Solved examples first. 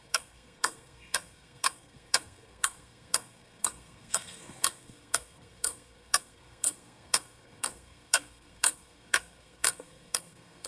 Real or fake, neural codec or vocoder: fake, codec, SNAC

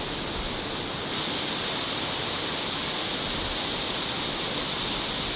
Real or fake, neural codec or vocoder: real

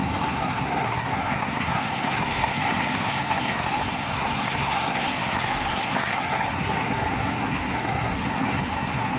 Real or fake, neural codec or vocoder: fake, codec, SNAC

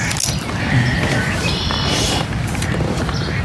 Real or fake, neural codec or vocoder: real